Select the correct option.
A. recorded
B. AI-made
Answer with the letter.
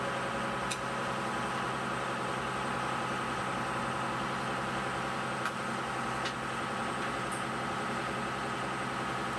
A